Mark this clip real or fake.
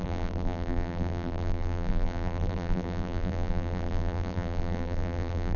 fake